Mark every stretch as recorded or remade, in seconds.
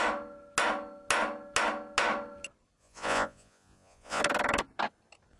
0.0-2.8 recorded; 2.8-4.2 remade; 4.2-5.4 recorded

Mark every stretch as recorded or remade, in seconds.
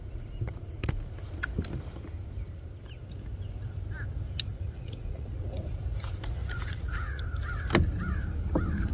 0.0-4.5 recorded; 4.5-5.3 remade; 5.3-6.4 recorded; 6.4-7.2 remade; 7.2-8.9 recorded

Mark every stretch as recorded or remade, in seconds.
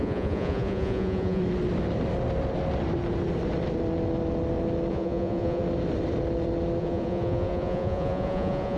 0.0-1.4 remade; 1.4-4.9 recorded; 4.9-5.6 remade; 5.6-6.8 recorded; 6.8-8.8 remade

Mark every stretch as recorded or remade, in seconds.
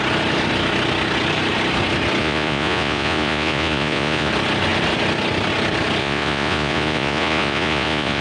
0.0-2.2 recorded; 2.2-4.3 remade; 4.3-6.0 recorded; 6.0-8.2 remade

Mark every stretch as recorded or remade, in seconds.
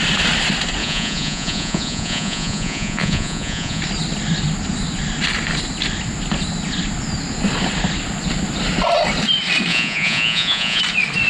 0.0-0.8 recorded; 0.8-3.8 remade; 3.8-9.7 recorded; 9.7-10.8 remade; 10.8-11.3 recorded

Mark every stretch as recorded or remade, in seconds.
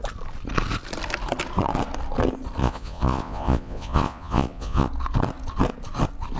0.0-2.6 recorded; 2.6-4.9 remade; 4.9-6.4 recorded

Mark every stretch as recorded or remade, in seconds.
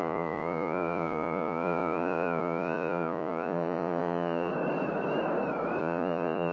0.0-4.5 remade; 4.5-5.8 recorded; 5.8-6.5 remade